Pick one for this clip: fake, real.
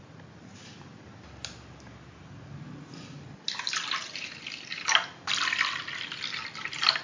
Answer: real